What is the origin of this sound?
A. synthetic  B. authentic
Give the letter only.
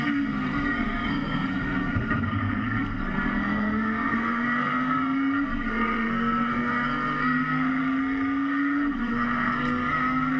A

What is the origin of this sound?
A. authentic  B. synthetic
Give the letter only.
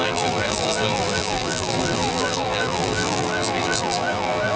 B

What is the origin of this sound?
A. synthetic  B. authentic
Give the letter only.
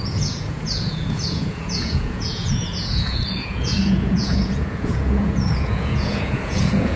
A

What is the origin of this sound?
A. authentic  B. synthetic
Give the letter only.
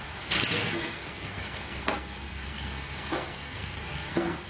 B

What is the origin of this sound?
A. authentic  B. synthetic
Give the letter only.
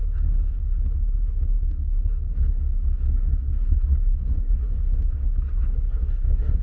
B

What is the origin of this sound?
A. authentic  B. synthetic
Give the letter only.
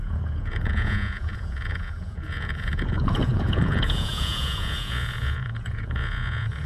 B